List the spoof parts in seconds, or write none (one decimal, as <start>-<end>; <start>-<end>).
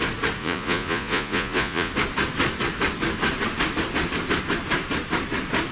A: 0.4-1.9